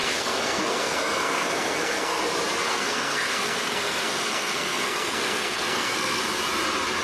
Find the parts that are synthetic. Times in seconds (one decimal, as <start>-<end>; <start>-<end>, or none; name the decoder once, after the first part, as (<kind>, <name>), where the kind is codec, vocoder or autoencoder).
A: 0.0-2.2 (codec, SNAC); 2.7-6.2